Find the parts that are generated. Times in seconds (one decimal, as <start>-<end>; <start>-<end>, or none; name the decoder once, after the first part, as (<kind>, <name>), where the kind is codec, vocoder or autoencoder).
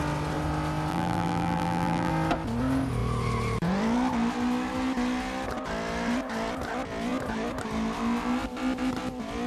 0.9-2.1 (vocoder, BigVGAN v2)